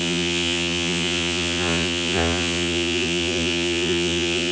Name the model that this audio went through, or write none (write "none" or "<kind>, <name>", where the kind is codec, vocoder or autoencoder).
vocoder, Vocos